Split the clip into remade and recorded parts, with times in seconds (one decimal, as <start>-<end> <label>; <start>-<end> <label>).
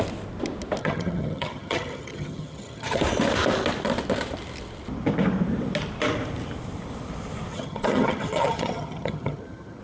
0.0-0.8 recorded; 0.8-3.0 remade; 3.0-7.5 recorded; 7.5-9.8 remade